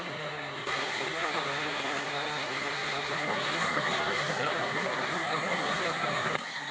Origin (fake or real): fake